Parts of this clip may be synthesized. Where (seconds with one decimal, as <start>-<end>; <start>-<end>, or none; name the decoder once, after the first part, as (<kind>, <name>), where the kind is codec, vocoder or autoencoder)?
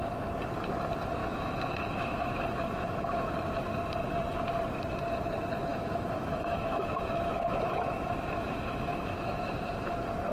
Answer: 1.2-3.3 (autoencoder, DAC-VAE); 5.7-9.5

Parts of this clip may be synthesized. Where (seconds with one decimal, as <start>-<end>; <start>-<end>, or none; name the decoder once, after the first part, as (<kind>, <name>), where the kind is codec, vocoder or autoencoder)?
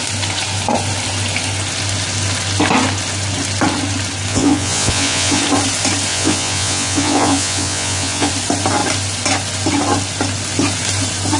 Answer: 4.3-5.4 (vocoder, Vocos); 6.1-8.3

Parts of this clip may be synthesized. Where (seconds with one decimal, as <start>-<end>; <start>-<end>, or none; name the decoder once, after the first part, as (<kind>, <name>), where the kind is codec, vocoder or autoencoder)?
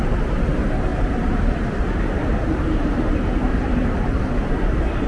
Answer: 0.9-1.8 (vocoder, BigVGAN v2); 2.2-3.1; 3.5-4.5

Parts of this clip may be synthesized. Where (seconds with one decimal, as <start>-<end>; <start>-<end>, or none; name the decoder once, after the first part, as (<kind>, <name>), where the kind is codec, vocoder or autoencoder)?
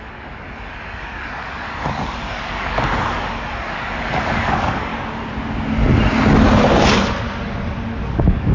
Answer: 0.0-4.9 (codec, DAC); 8.1-8.5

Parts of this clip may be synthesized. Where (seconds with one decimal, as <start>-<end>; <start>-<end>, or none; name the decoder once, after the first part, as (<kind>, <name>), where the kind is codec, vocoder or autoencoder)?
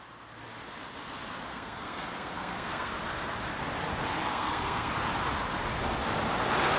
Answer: 1.5-2.9 (codec, SNAC); 4.3-4.9